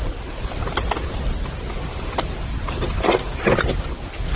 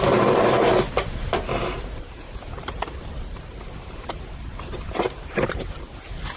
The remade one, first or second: second